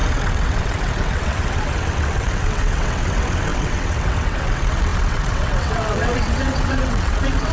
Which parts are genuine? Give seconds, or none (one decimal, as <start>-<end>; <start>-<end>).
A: none